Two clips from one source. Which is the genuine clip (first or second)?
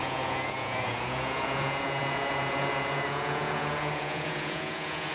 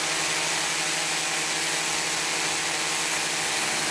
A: second